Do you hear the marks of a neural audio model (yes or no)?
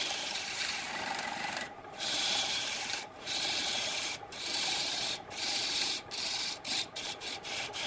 yes